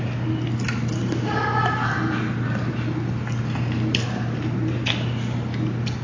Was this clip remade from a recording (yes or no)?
no